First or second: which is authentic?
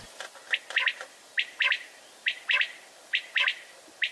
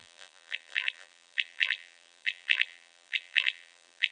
first